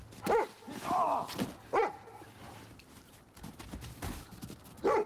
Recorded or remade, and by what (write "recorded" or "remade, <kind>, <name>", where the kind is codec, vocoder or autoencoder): recorded